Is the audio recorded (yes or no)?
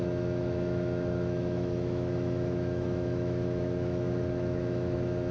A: no